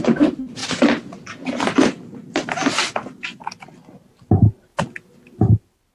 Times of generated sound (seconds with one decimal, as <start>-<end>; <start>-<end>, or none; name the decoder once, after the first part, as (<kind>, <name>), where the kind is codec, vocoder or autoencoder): 0.0-0.6 (vocoder, BigVGAN v2); 4.1-4.7; 5.5-5.9